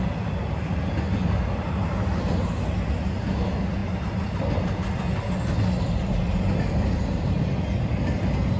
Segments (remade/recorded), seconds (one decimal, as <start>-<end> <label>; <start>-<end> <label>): 0.0-8.6 recorded